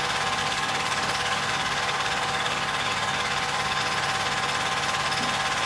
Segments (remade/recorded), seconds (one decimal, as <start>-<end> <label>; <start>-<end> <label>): 0.0-0.4 recorded; 0.4-3.8 remade; 3.8-5.7 recorded